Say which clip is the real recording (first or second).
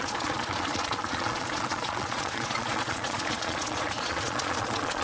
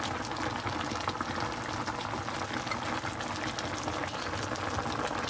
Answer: second